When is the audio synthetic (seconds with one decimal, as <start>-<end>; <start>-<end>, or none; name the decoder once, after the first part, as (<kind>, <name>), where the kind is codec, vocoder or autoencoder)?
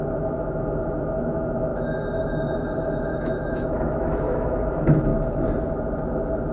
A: 0.0-5.1 (autoencoder, DAC-VAE)